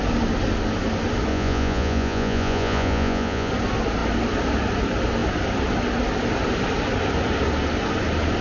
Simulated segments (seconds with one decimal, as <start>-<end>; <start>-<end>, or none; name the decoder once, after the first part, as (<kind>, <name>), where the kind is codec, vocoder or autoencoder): 1.3-3.5 (vocoder, Vocos)